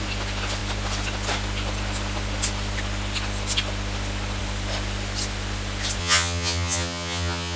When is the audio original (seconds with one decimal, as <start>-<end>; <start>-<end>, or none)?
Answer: 0.0-6.0